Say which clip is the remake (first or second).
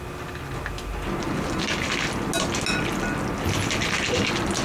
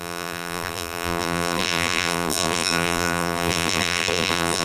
second